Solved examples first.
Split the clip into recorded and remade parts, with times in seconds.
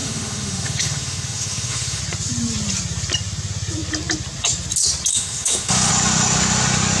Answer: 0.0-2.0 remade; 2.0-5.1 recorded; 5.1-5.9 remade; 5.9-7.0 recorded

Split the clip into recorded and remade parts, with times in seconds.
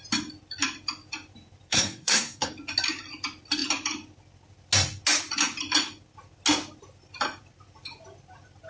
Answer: 0.0-1.7 recorded; 1.7-2.5 remade; 2.5-8.7 recorded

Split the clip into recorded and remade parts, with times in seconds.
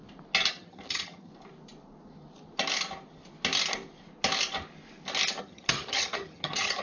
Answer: 0.0-0.5 recorded; 0.5-1.3 remade; 1.3-5.4 recorded; 5.4-6.8 remade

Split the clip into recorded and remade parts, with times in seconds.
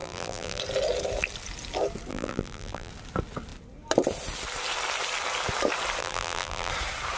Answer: 0.0-0.6 remade; 0.6-2.1 recorded; 2.1-2.9 remade; 2.9-6.0 recorded; 6.0-6.7 remade; 6.7-7.2 recorded